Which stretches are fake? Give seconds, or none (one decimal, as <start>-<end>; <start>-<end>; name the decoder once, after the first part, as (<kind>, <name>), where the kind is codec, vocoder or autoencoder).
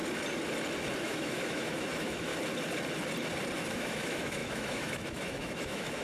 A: 1.0-2.3 (autoencoder, DAC-VAE); 3.7-6.0